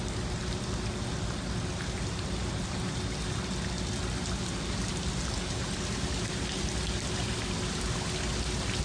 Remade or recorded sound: recorded